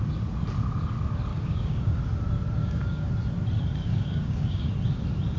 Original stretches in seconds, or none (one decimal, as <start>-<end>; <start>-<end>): 0.0-1.3; 2.0-2.6; 3.1-3.8; 4.7-5.4